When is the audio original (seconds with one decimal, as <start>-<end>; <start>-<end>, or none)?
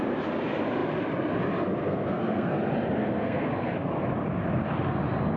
0.0-1.8; 2.6-3.0; 3.5-5.4